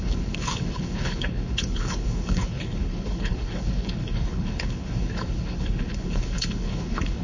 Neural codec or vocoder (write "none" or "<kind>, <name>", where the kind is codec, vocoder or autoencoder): codec, HILCodec